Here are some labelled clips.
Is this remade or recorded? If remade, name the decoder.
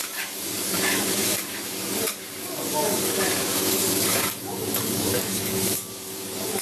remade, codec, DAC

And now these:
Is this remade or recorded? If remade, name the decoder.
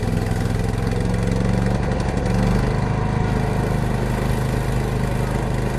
recorded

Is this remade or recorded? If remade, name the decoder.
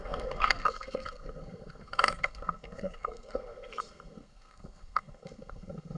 remade, codec, SNAC